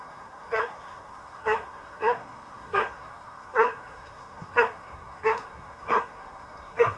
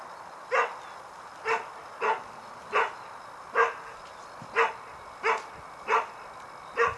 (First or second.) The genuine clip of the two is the second